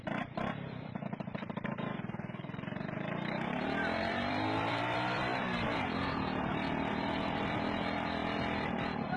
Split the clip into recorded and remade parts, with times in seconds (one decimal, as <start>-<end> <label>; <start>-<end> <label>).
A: 0.0-5.3 remade; 5.3-6.9 recorded; 6.9-8.2 remade; 8.2-8.7 recorded; 8.7-9.2 remade